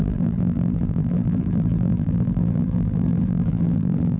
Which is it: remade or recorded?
remade